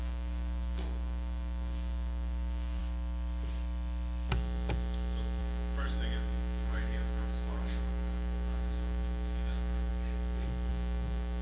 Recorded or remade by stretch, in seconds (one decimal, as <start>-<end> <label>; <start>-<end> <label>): 0.0-2.8 remade; 2.8-5.4 recorded; 5.4-9.9 remade; 9.9-10.7 recorded; 10.7-11.4 remade